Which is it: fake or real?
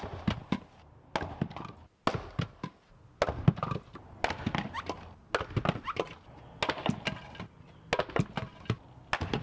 real